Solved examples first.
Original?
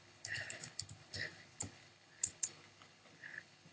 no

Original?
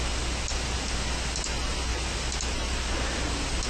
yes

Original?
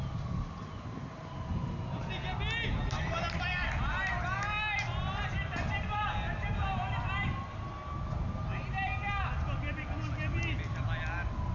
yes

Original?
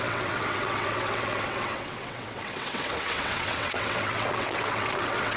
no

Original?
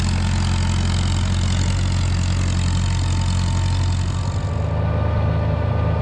yes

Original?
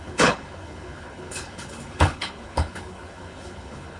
no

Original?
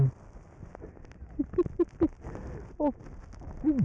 yes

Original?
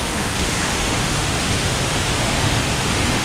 no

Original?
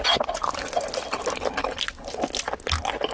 yes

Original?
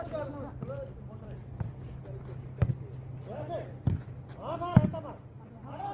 yes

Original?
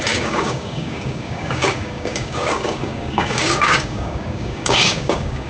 no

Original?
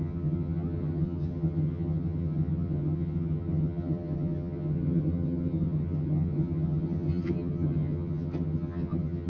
no